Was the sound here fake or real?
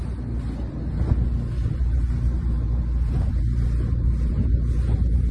real